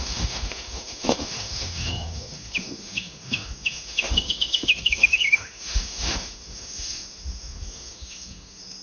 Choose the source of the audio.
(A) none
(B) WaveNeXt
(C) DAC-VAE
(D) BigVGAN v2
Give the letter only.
C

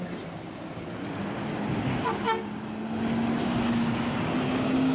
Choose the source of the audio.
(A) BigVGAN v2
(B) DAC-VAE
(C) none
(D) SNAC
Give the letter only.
C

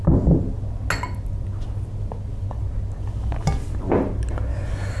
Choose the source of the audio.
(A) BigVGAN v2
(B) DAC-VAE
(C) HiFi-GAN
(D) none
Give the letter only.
D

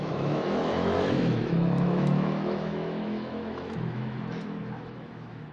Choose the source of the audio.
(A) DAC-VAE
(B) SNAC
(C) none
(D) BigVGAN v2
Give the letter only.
A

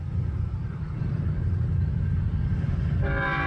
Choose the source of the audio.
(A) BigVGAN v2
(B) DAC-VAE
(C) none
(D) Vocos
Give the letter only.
C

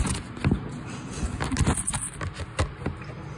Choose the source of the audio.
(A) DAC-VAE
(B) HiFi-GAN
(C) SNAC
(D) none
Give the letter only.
D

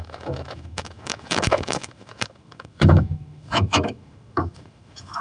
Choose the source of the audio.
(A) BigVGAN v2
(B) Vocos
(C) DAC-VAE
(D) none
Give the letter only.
C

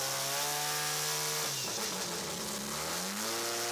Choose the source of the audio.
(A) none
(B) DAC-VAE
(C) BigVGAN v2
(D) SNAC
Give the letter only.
A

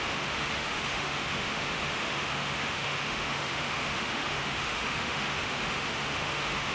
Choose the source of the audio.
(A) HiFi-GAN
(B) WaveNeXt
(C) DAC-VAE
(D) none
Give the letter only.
C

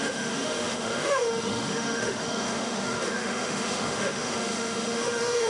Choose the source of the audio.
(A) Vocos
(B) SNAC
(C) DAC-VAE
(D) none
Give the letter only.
C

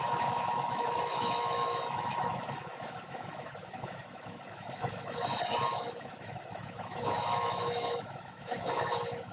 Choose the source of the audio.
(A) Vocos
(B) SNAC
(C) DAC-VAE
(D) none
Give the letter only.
C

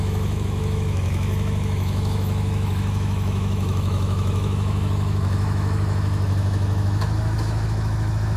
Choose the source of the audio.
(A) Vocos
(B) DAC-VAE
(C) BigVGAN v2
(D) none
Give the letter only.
B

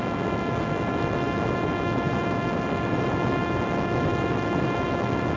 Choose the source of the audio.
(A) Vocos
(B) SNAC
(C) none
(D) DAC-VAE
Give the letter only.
D